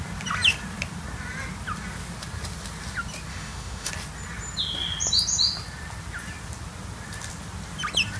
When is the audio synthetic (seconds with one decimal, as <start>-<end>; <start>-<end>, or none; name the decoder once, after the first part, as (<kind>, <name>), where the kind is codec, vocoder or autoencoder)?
3.3-3.9 (autoencoder, DAC-VAE)